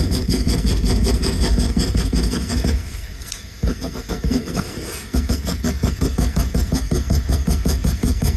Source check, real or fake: fake